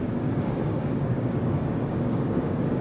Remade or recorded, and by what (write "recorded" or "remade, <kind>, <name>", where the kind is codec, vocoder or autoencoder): remade, codec, DAC